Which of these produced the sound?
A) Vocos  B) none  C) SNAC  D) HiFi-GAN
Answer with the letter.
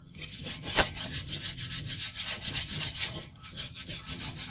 D